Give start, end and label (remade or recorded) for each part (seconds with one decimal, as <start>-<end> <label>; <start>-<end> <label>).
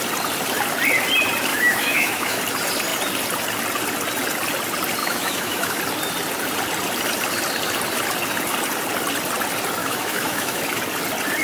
0.0-1.5 recorded; 1.5-2.4 remade; 2.4-5.0 recorded; 5.0-5.8 remade; 5.8-9.8 recorded; 9.8-10.6 remade; 10.6-11.4 recorded